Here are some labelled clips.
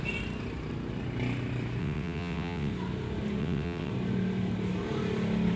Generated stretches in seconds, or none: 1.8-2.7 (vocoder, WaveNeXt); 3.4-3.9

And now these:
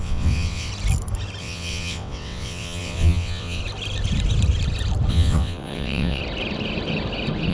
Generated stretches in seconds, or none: 0.0-0.7 (vocoder, WaveNeXt); 1.4-3.6; 5.1-6.2

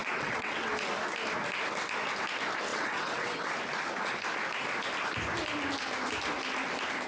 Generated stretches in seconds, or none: 0.0-0.7 (vocoder, WaveNeXt); 2.7-3.5

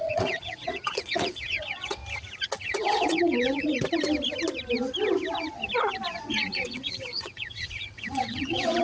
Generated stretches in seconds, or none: 0.0-2.0 (vocoder, WaveNeXt); 2.6-3.7; 6.1-8.8

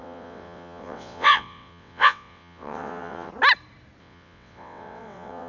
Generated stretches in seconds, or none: 0.0-3.3 (vocoder, WaveNeXt); 4.0-5.5

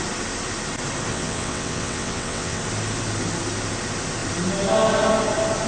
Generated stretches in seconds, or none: 1.1-2.6 (vocoder, WaveNeXt)